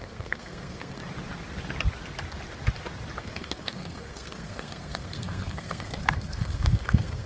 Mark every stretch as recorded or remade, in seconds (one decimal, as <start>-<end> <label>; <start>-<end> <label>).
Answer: 0.0-1.0 remade; 1.0-3.2 recorded; 3.2-7.3 remade